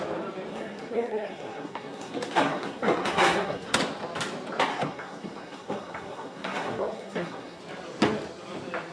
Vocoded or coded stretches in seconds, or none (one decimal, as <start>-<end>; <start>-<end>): 0.5-3.8; 4.7-7.6